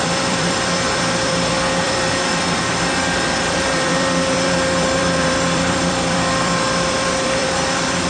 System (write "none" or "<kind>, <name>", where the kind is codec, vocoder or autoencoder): vocoder, BigVGAN v2